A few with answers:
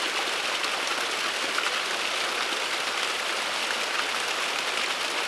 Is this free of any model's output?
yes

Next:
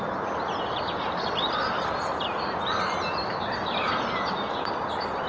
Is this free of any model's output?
yes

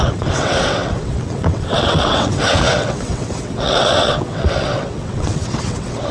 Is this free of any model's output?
no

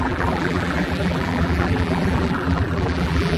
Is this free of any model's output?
no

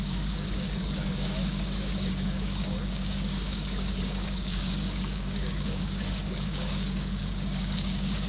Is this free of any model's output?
no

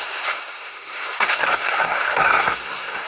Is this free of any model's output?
no